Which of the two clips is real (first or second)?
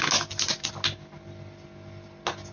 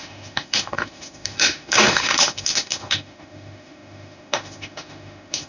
first